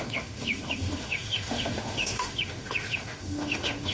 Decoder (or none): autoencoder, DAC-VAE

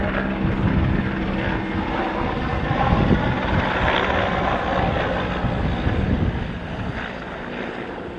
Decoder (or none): none